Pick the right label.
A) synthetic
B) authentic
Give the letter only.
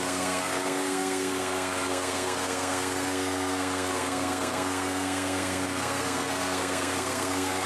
A